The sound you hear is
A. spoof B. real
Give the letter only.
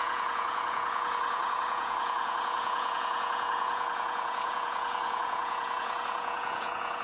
A